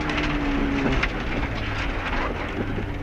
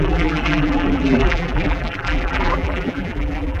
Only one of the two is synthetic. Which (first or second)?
second